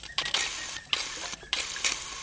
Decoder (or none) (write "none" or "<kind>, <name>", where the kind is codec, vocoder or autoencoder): none